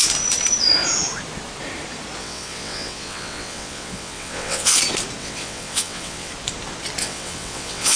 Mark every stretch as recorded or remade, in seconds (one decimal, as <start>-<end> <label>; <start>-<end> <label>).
0.0-2.2 recorded; 2.2-4.8 remade; 4.8-5.2 recorded; 5.2-6.3 remade; 6.3-7.0 recorded; 7.0-8.0 remade